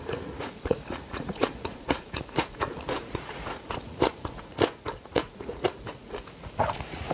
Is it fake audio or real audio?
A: fake